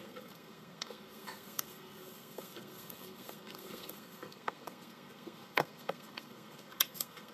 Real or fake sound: fake